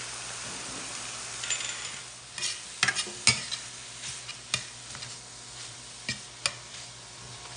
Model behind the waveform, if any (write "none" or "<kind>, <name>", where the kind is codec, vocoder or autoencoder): none